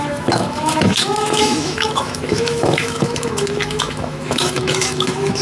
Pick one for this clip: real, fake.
fake